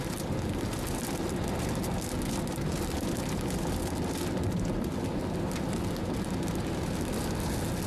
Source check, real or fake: real